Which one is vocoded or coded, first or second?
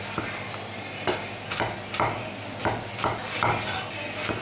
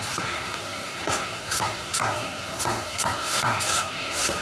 second